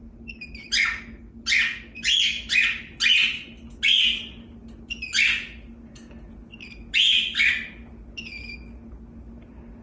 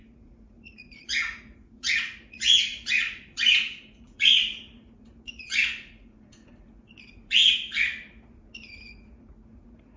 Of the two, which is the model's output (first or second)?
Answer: second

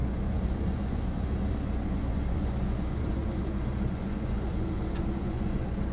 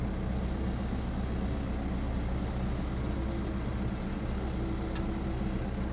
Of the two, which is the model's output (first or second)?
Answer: first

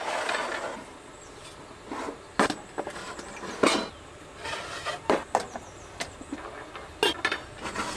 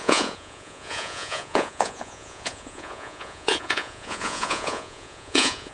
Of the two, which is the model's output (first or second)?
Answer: second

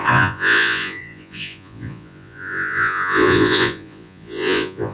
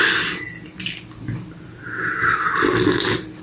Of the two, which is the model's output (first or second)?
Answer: first